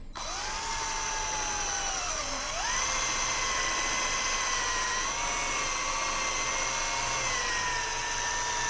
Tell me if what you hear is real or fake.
real